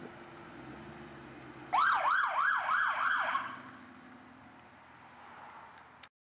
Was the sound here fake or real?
real